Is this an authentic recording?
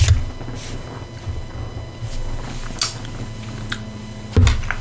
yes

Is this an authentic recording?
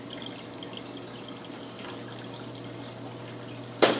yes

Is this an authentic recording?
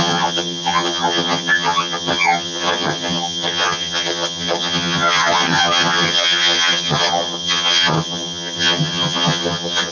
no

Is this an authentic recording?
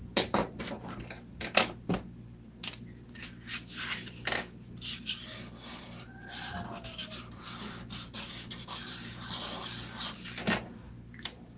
yes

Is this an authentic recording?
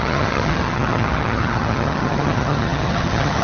no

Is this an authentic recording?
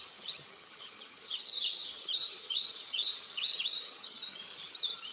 no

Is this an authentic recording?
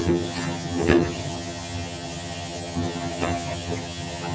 no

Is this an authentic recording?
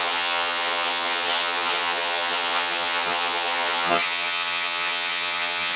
no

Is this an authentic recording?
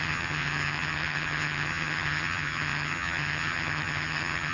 no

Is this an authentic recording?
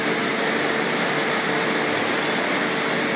yes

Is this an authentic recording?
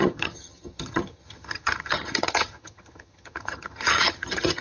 no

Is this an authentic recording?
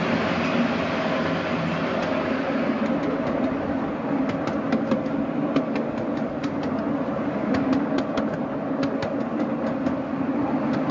yes